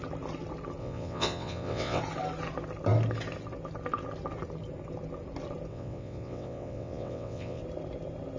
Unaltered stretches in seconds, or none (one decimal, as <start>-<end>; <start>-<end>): 0.0-0.8; 2.0-5.7; 7.6-8.4